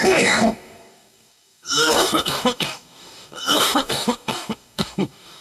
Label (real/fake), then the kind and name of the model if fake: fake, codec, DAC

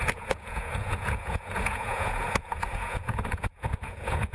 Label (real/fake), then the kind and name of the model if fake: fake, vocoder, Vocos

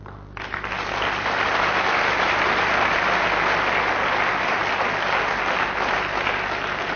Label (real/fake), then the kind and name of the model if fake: real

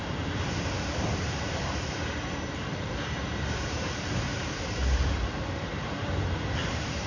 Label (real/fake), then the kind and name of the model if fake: fake, vocoder, BigVGAN v2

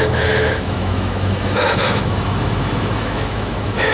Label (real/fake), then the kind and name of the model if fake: fake, autoencoder, DAC-VAE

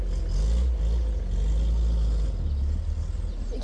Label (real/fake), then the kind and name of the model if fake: real